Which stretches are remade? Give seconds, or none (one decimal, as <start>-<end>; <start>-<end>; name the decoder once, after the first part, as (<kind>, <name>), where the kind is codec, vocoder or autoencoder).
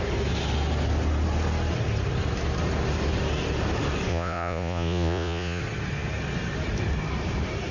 4.1-5.6 (vocoder, Vocos)